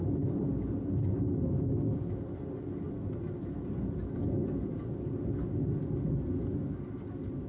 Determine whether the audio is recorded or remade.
recorded